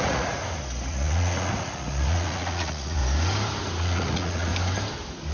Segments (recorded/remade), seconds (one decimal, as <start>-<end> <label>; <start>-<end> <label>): 0.0-0.4 remade; 0.4-0.9 recorded; 0.9-3.0 remade; 3.0-3.8 recorded; 3.8-4.5 remade; 4.5-5.3 recorded